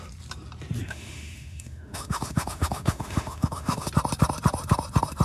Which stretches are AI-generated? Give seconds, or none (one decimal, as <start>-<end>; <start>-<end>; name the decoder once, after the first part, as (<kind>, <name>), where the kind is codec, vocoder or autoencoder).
0.8-3.9 (autoencoder, DAC-VAE)